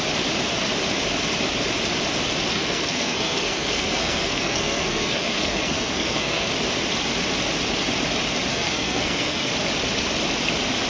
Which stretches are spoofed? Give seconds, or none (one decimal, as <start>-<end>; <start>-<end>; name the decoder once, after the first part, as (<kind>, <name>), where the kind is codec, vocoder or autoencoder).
2.5-6.5 (codec, SNAC); 8.5-9.5